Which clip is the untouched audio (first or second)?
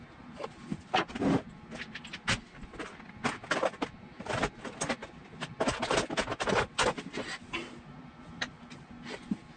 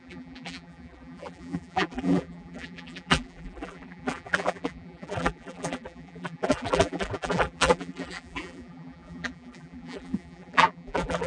first